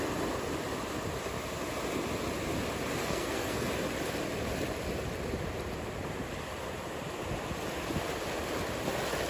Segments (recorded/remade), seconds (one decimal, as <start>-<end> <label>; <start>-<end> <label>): 0.0-3.0 recorded; 3.0-3.7 remade; 3.7-9.3 recorded